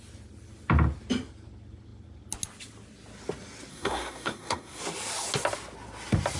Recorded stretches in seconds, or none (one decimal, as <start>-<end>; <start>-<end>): 0.0-3.7; 4.8-6.4